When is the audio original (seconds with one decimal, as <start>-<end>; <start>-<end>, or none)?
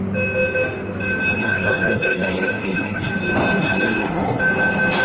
0.0-1.4; 3.1-3.6; 4.4-5.0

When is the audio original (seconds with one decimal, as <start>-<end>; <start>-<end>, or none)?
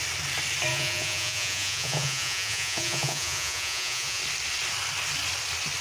0.0-0.7; 4.2-5.8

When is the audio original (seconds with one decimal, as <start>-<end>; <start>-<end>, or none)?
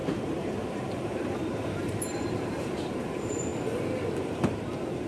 3.5-4.2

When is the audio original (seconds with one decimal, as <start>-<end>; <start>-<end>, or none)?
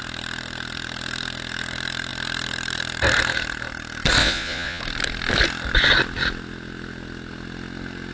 0.0-4.2; 4.8-8.1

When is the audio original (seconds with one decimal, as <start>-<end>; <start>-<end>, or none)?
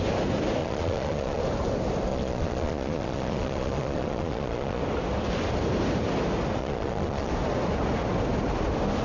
0.0-0.6; 1.4-2.1; 4.8-6.6; 7.3-9.0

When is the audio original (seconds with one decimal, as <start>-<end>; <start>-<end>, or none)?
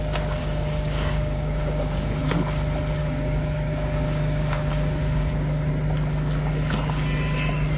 0.0-0.4; 2.2-3.0; 5.7-7.8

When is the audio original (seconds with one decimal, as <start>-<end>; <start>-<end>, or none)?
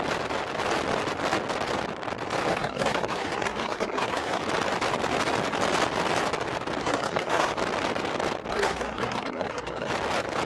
0.0-2.5; 4.4-6.8; 7.5-8.5; 9.9-10.5